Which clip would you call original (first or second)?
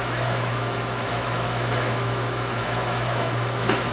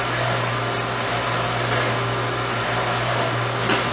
second